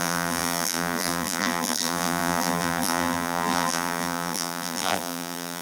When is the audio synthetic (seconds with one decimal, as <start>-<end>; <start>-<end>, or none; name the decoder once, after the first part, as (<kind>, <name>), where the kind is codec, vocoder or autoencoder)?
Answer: 0.0-5.6 (vocoder, BigVGAN v2)